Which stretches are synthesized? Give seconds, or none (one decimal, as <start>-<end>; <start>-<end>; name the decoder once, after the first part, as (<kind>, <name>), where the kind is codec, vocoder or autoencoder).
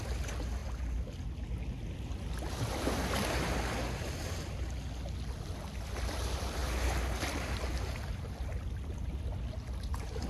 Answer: none